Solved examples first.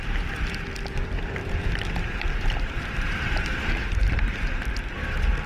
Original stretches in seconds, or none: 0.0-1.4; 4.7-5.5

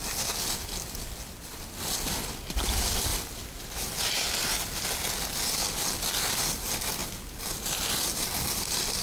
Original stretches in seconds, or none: 0.0-9.0